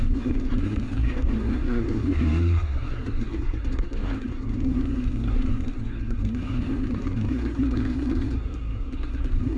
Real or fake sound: fake